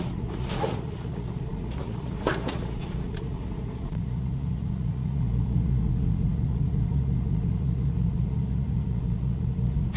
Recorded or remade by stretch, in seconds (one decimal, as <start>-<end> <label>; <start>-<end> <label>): 0.0-10.0 remade